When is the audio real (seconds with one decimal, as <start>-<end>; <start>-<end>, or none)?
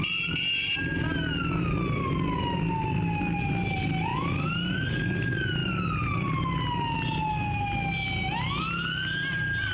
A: 0.0-9.7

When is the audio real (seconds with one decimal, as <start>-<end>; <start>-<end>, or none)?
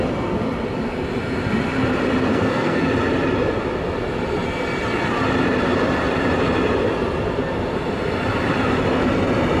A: 0.0-2.3; 2.9-9.6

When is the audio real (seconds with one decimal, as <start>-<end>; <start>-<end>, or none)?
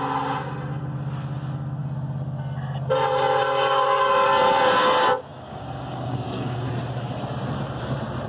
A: 0.0-5.3; 6.7-8.3